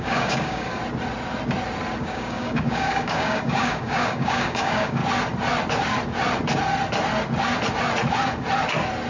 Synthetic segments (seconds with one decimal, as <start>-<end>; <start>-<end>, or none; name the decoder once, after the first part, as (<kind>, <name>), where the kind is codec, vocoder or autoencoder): 0.0-0.8 (codec, DAC); 2.0-5.0

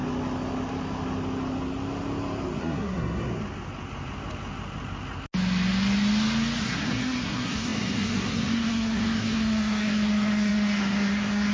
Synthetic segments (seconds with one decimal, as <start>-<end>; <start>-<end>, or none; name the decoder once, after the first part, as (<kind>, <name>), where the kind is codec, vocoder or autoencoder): 2.6-3.3 (codec, SNAC); 6.6-11.5

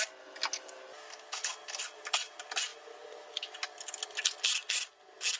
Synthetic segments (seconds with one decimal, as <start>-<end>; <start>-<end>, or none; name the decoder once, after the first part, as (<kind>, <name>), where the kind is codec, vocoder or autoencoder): none